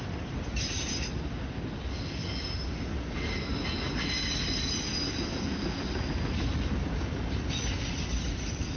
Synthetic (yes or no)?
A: no